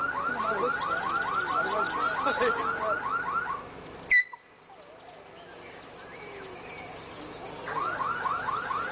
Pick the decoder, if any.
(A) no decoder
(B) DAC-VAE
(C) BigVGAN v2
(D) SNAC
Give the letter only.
A